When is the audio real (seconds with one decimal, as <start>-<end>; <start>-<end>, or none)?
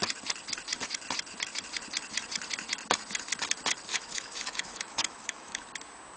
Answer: 0.0-3.9; 5.6-6.2